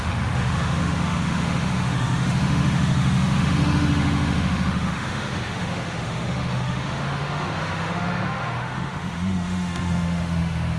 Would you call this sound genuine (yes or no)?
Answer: no